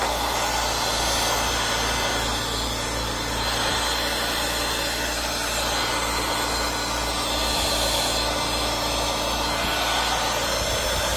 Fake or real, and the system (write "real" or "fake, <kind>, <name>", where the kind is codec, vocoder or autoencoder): real